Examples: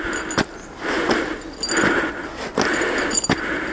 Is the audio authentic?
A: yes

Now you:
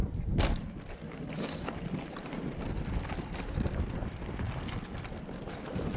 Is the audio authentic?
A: no